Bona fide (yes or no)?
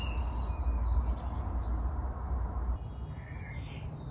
yes